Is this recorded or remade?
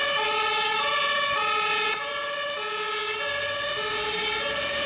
recorded